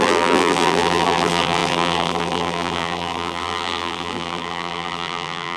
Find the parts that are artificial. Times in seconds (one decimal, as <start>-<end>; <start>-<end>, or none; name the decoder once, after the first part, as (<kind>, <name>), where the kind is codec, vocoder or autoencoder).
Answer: 0.0-5.6 (vocoder, BigVGAN v2)